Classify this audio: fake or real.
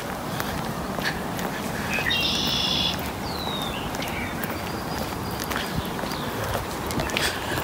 real